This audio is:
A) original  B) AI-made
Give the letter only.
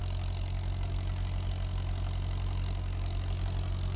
A